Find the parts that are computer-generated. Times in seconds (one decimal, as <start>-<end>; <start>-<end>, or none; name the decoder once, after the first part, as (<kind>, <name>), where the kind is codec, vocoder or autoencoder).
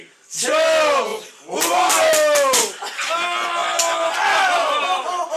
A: 1.1-2.1 (vocoder, BigVGAN v2)